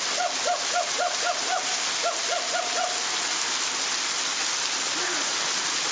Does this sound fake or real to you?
real